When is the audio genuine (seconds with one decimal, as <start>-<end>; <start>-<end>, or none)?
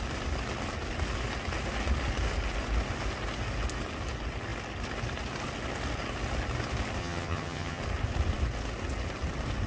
0.0-7.0; 7.8-9.7